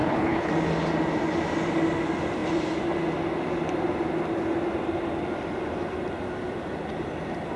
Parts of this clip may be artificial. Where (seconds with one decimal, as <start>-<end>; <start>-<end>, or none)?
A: 0.0-0.5

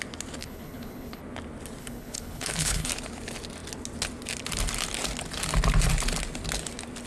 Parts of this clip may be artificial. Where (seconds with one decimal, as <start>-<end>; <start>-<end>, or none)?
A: 0.4-1.2; 1.8-2.9